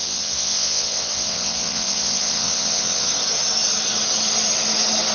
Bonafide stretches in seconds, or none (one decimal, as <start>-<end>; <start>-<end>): 3.1-5.1